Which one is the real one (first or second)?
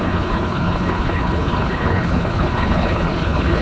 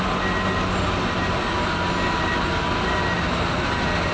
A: second